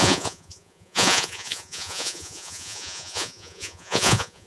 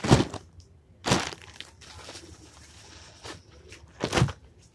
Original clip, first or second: second